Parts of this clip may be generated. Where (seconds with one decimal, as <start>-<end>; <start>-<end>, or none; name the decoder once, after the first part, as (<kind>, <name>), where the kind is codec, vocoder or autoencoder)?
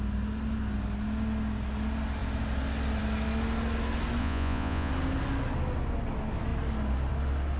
4.2-4.9 (vocoder, Vocos)